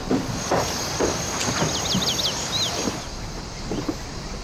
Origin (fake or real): real